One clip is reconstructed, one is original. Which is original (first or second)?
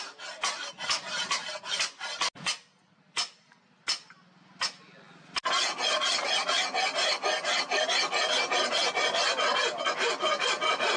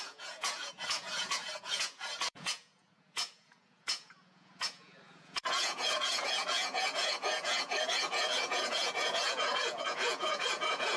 first